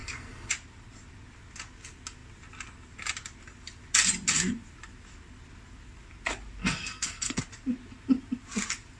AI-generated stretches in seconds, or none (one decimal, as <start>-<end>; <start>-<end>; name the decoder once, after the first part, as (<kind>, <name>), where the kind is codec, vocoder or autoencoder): 0.0-0.5 (codec, SNAC); 6.6-7.4